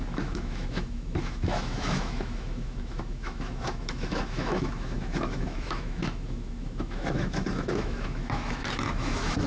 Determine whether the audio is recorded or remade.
remade